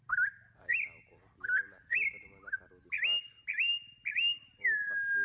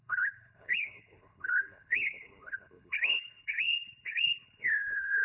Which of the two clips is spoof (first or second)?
second